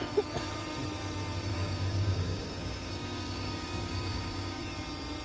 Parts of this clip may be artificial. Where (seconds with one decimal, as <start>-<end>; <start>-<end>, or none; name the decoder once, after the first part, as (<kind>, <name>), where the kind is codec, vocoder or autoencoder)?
1.5-4.6 (codec, DAC)